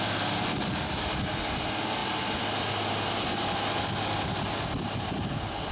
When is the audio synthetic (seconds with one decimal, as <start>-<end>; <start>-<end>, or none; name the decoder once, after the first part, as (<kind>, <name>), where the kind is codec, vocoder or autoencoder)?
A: none

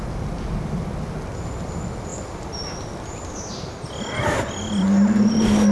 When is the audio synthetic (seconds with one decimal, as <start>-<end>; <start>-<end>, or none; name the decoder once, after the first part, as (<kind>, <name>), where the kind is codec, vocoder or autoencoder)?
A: 2.1-2.8 (vocoder, BigVGAN v2); 3.5-4.4

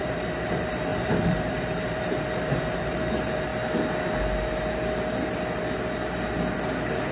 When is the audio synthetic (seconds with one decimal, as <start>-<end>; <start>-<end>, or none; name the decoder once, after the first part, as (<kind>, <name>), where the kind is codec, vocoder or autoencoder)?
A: 0.0-3.5 (vocoder, BigVGAN v2); 6.5-7.1

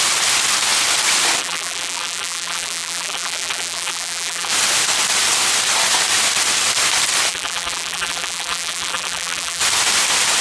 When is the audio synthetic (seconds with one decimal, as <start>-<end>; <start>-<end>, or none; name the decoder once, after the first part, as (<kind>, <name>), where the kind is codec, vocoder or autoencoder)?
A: 1.4-4.5 (vocoder, BigVGAN v2); 7.3-9.6